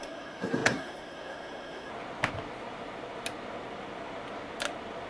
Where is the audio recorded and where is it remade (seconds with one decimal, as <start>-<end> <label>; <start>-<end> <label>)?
0.0-1.9 remade; 1.9-5.1 recorded